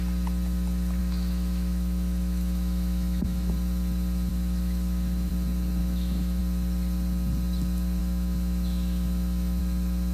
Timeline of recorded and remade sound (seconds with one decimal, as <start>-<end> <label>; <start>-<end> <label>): 0.0-1.0 recorded; 1.0-3.5 remade; 3.5-4.3 recorded; 4.3-5.3 remade; 5.3-5.8 recorded; 5.8-6.4 remade; 6.4-8.0 recorded; 8.0-9.6 remade; 9.6-10.1 recorded